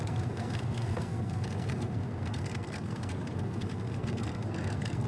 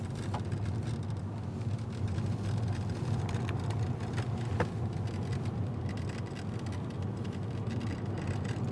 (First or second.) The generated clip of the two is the first